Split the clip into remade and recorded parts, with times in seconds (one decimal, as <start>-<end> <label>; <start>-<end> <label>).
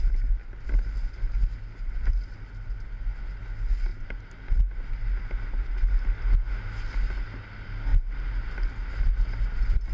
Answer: 0.0-9.9 recorded